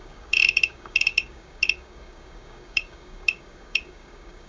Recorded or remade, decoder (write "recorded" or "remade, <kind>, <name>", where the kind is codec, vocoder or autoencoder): remade, codec, DAC